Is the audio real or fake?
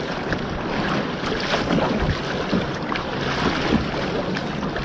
real